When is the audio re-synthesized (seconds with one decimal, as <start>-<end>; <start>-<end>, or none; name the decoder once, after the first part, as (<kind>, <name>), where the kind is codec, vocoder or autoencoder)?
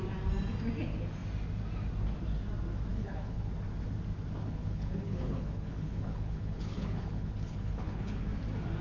2.9-3.5 (codec, HILCodec); 4.4-8.2